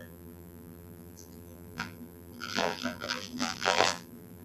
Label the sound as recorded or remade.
remade